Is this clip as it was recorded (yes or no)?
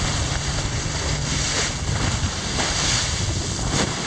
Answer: yes